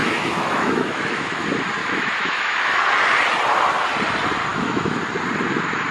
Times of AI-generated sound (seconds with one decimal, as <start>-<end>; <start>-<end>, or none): 0.0-1.4; 1.8-2.8; 4.5-5.0